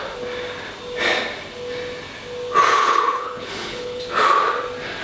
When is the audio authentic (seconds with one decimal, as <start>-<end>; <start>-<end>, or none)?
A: 0.0-2.7; 4.0-5.0